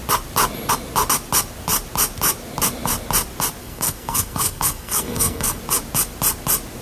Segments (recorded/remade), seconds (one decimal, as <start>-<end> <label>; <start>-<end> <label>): 0.0-3.6 recorded; 3.6-5.6 remade; 5.6-6.8 recorded

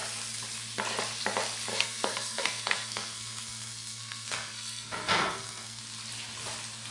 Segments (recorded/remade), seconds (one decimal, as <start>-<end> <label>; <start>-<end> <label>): 0.0-1.7 recorded; 1.7-5.8 remade; 5.8-6.9 recorded